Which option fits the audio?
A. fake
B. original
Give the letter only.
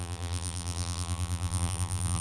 A